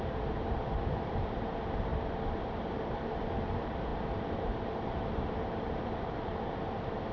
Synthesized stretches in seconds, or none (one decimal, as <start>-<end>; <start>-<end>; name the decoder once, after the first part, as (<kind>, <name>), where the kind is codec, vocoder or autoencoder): 0.0-7.1 (vocoder, BigVGAN v2)